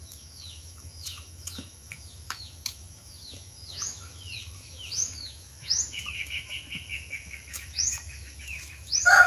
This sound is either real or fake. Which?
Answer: fake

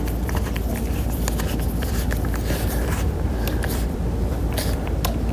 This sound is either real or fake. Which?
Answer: fake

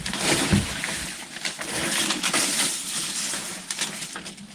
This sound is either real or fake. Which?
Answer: real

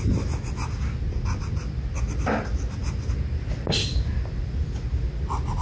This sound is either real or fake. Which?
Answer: real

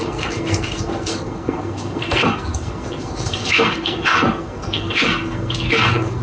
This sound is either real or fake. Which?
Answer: fake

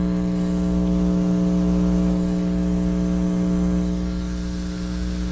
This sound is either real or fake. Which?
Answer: real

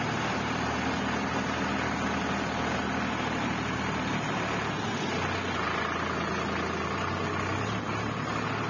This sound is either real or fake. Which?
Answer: real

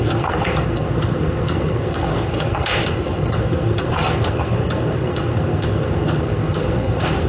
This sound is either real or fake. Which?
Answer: fake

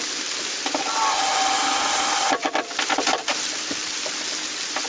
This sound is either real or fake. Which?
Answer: real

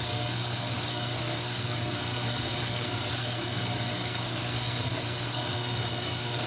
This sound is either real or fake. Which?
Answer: fake